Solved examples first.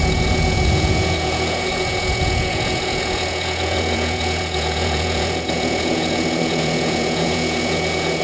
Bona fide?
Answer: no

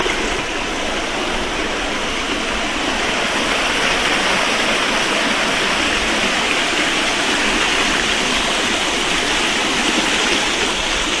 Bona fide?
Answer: yes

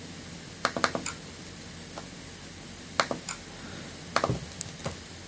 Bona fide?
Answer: yes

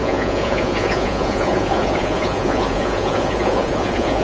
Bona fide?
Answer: no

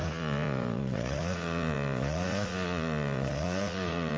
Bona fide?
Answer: no